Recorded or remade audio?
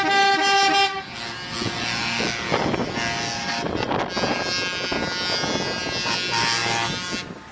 recorded